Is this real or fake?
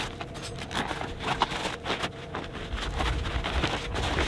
real